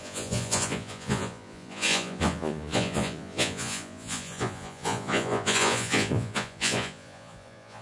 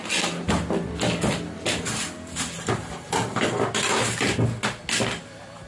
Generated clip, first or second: first